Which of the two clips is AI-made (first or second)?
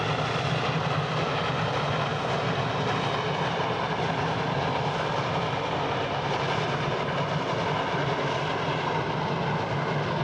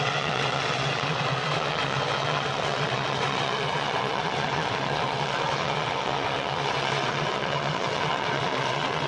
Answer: second